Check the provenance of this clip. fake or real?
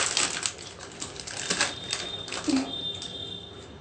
real